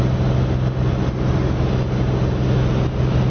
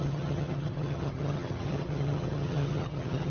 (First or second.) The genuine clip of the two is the first